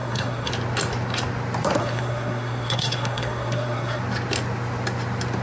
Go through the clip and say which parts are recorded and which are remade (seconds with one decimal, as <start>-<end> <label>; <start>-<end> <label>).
0.0-0.5 remade; 0.5-1.8 recorded; 1.8-4.0 remade; 4.0-5.4 recorded